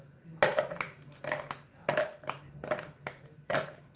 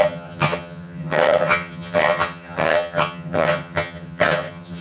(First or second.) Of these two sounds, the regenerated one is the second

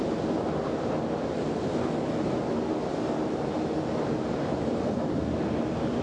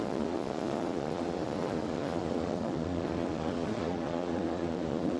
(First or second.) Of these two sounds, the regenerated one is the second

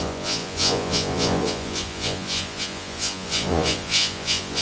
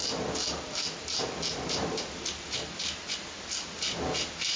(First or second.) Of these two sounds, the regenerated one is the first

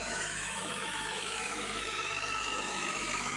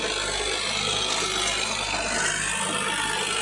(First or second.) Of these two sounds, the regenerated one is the first